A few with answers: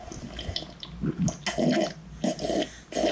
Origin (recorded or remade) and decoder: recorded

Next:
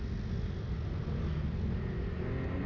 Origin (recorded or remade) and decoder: recorded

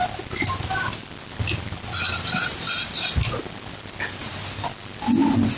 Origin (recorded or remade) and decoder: recorded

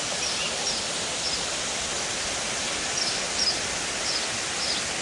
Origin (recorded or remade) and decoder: recorded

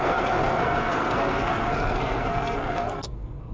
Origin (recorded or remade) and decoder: remade, codec, SNAC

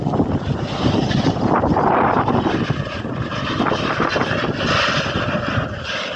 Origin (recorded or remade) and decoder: recorded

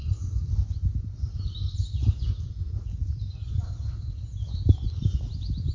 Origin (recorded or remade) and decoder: recorded